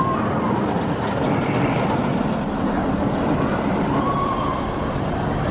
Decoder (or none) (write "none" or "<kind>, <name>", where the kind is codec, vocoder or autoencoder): none